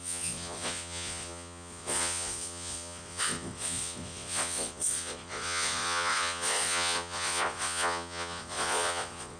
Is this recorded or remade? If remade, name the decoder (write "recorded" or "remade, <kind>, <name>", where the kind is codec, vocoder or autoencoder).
remade, vocoder, Vocos